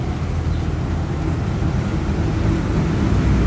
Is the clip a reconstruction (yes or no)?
no